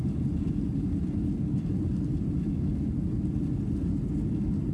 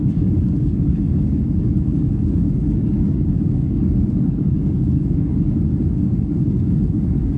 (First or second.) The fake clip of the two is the second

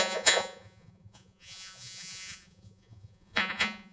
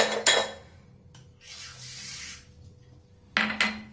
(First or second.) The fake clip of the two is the first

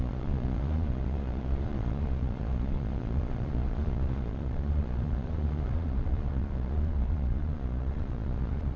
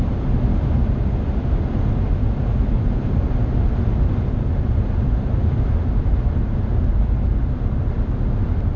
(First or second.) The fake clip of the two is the first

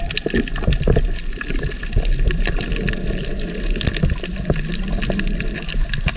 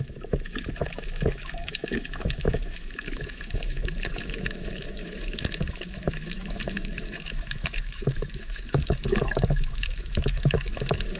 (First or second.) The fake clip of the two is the second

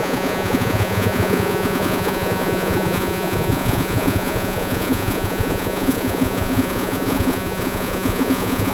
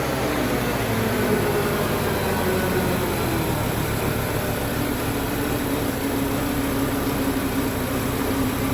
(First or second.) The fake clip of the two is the first